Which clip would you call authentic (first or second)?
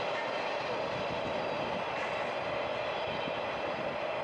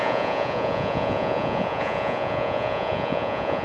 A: first